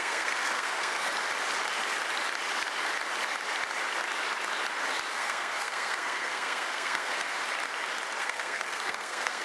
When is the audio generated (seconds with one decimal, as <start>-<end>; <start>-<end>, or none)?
0.0-1.1; 5.1-7.4; 8.2-9.4